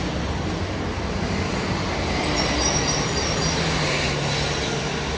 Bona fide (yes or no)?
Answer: yes